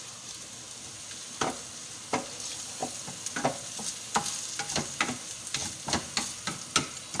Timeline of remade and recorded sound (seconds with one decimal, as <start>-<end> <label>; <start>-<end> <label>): 0.0-7.2 recorded